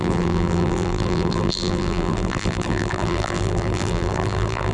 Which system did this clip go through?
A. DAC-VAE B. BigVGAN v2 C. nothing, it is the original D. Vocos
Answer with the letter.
B